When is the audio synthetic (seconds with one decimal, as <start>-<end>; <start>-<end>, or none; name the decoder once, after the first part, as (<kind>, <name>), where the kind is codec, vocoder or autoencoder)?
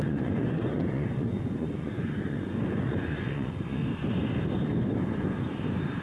0.0-3.8 (vocoder, Vocos)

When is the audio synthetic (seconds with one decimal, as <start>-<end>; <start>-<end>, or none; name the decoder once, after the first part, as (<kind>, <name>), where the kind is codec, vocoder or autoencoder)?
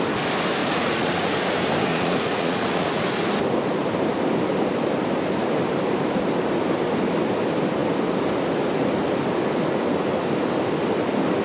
0.6-1.3 (vocoder, Vocos); 1.9-3.0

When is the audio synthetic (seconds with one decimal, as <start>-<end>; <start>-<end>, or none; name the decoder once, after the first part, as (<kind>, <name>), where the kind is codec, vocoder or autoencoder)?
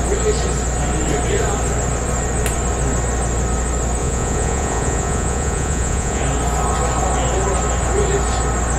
4.0-6.2 (vocoder, Vocos)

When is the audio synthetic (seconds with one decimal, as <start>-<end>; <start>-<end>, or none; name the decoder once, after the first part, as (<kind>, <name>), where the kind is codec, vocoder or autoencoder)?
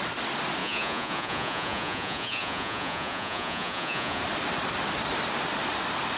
0.6-4.2 (vocoder, Vocos)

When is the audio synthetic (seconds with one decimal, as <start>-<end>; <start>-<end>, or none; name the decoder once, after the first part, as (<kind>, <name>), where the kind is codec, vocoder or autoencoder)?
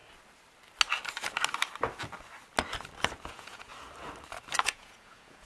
3.3-3.7 (vocoder, Vocos); 4.6-5.5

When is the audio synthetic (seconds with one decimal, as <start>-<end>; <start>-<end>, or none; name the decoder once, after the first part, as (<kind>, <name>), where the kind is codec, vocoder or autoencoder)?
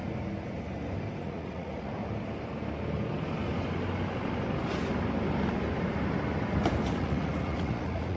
1.2-2.0 (vocoder, Vocos); 6.9-8.2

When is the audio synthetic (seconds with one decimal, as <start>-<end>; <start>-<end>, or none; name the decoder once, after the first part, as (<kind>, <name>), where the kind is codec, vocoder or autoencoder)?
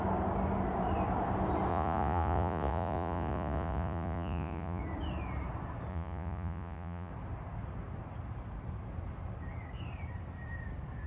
1.7-4.8 (vocoder, Vocos); 5.9-7.1